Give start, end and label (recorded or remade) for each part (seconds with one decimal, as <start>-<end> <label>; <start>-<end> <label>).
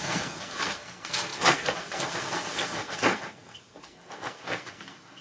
0.0-5.2 remade